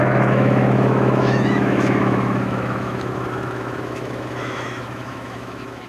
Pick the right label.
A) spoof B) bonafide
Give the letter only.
A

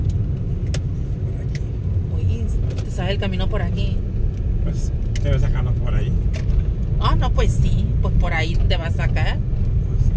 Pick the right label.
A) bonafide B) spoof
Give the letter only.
A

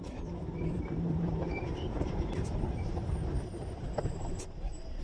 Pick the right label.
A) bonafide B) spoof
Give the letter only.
B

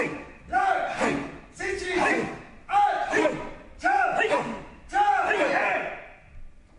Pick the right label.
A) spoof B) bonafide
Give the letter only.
B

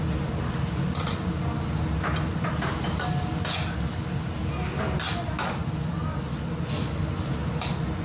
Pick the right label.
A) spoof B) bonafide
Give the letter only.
B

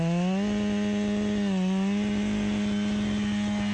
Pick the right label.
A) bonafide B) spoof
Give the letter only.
A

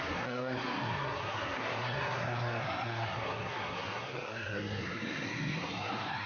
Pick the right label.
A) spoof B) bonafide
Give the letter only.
A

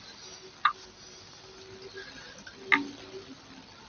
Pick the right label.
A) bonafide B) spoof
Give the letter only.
A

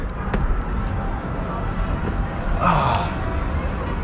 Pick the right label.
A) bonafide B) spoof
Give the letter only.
A